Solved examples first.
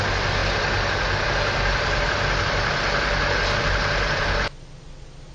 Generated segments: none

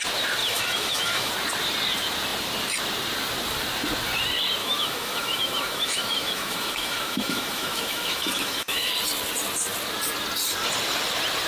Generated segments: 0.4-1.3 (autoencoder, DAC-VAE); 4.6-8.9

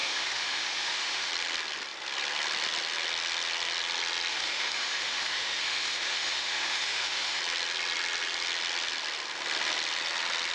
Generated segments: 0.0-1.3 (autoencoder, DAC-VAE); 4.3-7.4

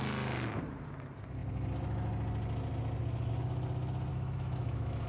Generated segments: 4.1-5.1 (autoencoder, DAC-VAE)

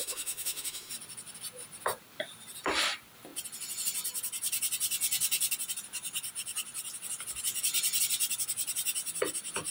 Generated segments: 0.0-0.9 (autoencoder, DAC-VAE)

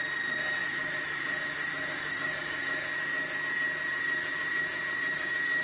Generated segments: 0.6-3.1 (autoencoder, DAC-VAE)